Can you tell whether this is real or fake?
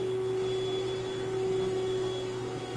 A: real